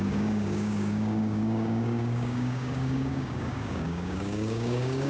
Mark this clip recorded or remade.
remade